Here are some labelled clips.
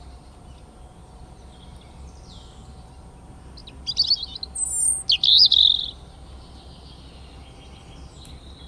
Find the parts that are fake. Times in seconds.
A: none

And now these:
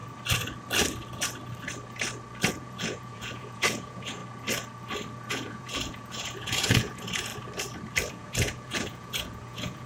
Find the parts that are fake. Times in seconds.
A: 2.5-4.2 (vocoder, Vocos); 5.3-7.3; 8.1-9.9

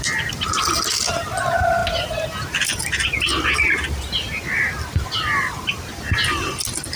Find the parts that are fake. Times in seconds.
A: none

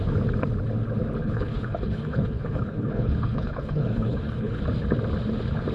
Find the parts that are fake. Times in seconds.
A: 1.2-4.6 (codec, HILCodec)

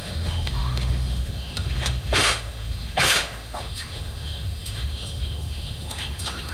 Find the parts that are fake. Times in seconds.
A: 0.0-6.5 (autoencoder, DAC-VAE)

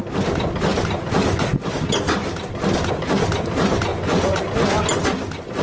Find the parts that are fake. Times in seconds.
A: 3.9-4.4 (vocoder, Vocos)

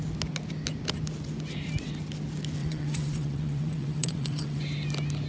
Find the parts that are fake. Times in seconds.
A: 2.6-4.6 (vocoder, WaveNeXt)